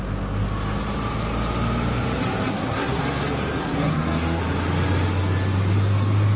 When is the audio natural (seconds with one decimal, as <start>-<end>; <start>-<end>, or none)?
0.0-2.5; 3.0-3.6; 4.4-6.4